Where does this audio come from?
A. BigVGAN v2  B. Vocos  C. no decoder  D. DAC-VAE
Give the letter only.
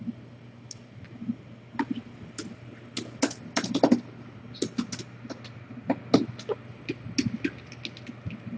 C